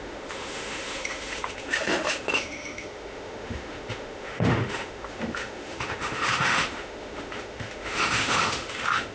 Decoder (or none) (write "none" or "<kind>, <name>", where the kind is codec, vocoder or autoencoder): autoencoder, DAC-VAE